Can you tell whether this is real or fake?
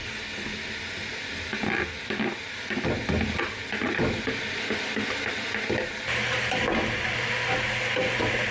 real